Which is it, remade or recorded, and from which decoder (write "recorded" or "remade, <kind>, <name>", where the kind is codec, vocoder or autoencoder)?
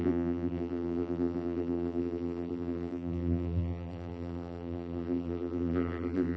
remade, vocoder, BigVGAN v2